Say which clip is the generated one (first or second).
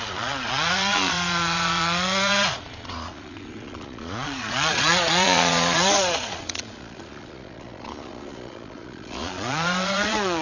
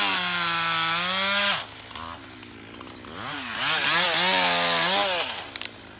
first